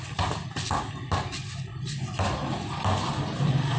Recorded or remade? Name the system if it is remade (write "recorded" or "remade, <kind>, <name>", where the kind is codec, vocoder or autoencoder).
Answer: recorded